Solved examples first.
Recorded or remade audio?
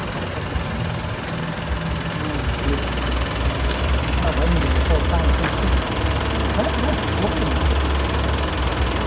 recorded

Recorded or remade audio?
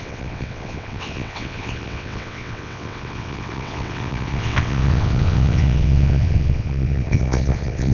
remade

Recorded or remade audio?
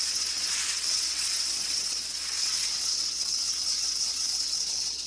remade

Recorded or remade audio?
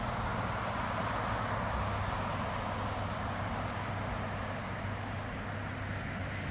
recorded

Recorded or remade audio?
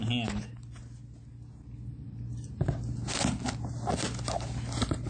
recorded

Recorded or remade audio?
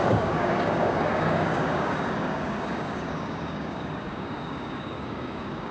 remade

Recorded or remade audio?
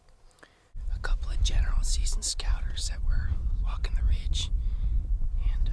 remade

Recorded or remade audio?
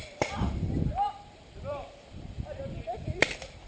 remade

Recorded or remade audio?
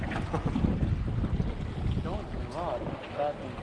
recorded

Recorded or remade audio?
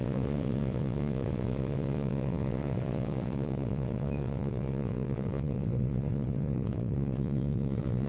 remade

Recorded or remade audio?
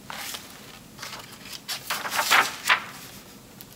recorded